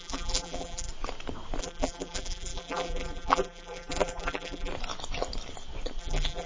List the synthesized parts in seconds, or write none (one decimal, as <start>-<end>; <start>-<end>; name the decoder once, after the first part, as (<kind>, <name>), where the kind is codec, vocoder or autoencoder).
0.0-0.9 (vocoder, BigVGAN v2); 1.6-4.7; 6.0-6.5